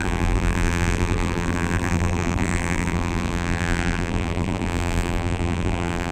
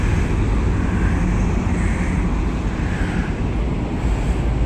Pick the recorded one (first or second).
second